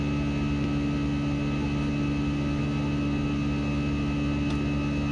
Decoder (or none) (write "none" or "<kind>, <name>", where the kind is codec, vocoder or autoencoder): none